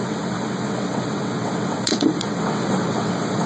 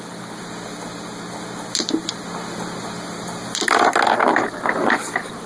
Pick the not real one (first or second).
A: first